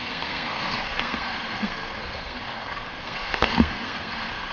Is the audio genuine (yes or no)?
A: no